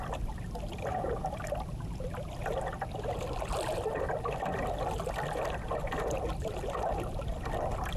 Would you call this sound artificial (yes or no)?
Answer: no